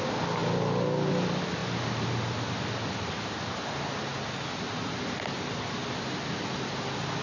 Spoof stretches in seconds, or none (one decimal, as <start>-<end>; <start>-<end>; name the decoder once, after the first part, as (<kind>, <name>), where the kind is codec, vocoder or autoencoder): none